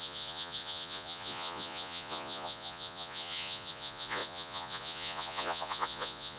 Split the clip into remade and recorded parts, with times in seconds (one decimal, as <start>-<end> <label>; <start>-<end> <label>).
0.0-6.4 remade